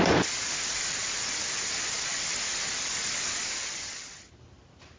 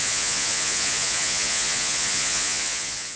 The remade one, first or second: second